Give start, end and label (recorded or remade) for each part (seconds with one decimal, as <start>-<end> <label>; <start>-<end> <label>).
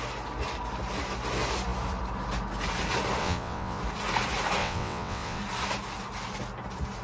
0.0-3.2 recorded; 3.2-3.8 remade; 3.8-4.6 recorded; 4.6-5.4 remade; 5.4-7.0 recorded